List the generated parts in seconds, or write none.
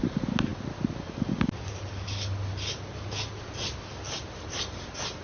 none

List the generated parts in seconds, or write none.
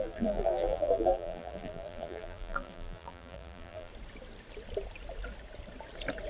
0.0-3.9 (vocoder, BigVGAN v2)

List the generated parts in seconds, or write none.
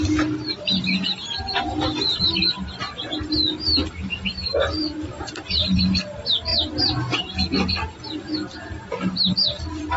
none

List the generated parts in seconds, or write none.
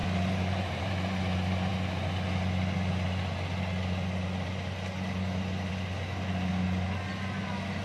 0.0-1.2 (vocoder, BigVGAN v2)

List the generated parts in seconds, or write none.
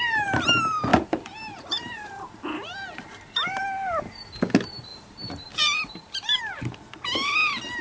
0.9-3.6 (vocoder, BigVGAN v2); 4.9-6.4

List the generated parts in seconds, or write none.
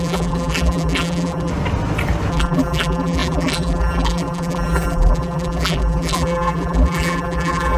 0.0-1.5 (vocoder, BigVGAN v2); 2.3-7.8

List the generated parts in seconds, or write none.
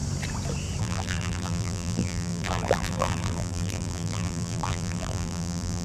0.8-5.8 (vocoder, BigVGAN v2)